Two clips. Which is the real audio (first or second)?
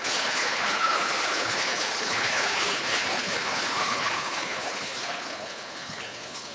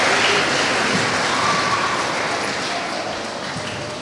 second